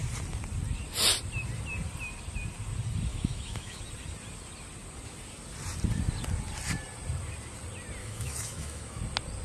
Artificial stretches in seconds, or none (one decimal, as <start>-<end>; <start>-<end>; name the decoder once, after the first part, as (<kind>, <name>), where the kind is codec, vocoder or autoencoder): 3.1-3.8 (autoencoder, DAC-VAE); 8.0-9.0